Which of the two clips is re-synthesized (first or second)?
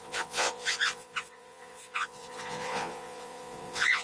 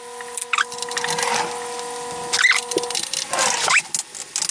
first